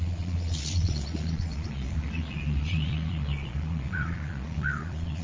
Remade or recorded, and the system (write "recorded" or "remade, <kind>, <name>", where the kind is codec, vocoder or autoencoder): remade, vocoder, Vocos